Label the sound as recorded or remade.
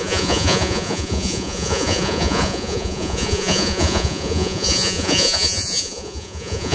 remade